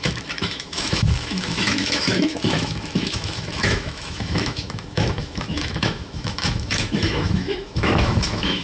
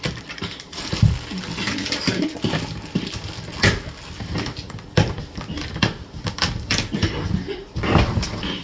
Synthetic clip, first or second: first